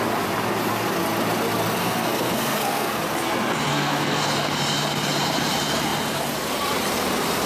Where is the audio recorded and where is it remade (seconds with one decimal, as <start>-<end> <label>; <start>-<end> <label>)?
0.0-1.8 recorded; 1.8-3.0 remade; 3.0-3.7 recorded; 3.7-4.2 remade; 4.2-7.5 recorded